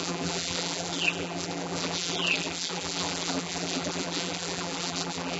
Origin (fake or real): fake